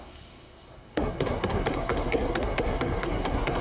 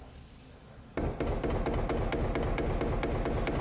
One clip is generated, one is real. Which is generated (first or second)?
first